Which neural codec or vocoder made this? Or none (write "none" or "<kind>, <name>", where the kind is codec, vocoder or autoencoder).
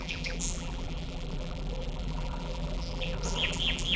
vocoder, BigVGAN v2